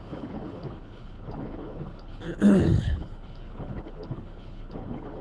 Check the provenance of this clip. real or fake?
fake